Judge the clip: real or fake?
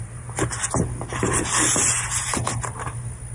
real